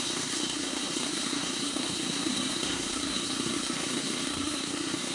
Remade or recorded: remade